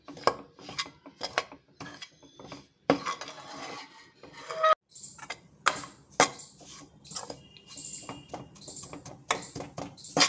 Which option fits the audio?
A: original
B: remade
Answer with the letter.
A